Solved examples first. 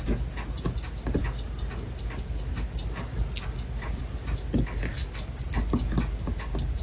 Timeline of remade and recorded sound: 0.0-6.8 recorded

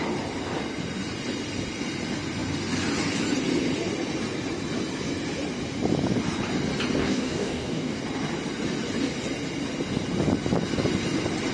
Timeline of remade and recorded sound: 0.0-7.0 recorded; 7.0-8.0 remade; 8.0-11.5 recorded